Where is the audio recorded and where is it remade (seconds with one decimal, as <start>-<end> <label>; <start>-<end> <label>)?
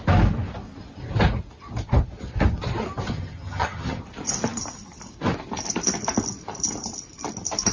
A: 0.0-3.1 recorded; 3.1-4.0 remade; 4.0-7.7 recorded